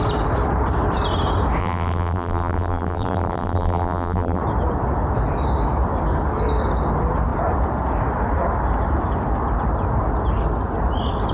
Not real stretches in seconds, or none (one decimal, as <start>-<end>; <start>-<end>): 1.6-4.4